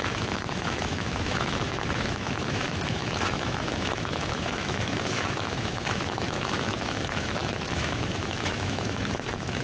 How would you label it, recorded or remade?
remade